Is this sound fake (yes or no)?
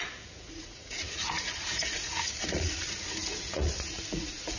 yes